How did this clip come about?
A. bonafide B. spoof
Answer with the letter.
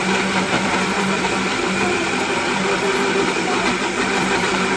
B